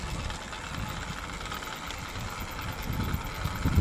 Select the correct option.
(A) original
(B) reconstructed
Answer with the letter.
A